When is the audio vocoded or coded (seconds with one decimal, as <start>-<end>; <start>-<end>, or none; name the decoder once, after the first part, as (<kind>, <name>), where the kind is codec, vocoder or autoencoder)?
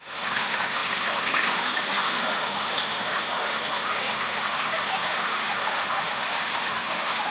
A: 0.0-7.3 (autoencoder, DAC-VAE)